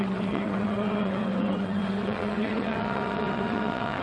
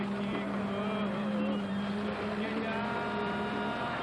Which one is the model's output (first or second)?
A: first